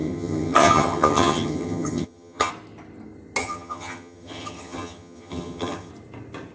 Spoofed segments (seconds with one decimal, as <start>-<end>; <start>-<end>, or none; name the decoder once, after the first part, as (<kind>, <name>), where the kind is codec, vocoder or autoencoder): 0.0-2.5 (vocoder, HiFi-GAN); 3.4-5.9